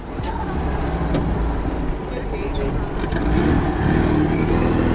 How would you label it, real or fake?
real